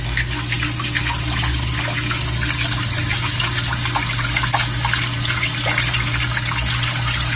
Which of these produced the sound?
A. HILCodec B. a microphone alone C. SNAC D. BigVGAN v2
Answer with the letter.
B